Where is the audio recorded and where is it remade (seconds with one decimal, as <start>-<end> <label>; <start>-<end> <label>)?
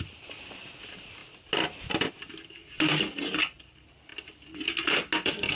0.0-5.6 recorded